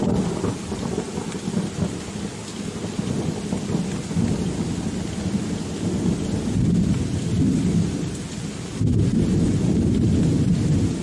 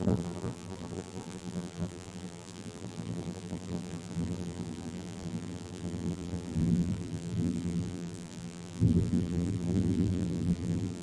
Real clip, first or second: first